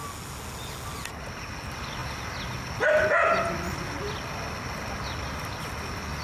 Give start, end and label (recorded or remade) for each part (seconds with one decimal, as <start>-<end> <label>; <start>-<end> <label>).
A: 0.0-6.2 recorded